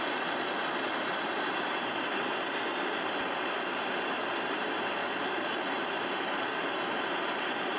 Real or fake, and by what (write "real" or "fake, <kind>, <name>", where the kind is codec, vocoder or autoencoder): fake, vocoder, BigVGAN v2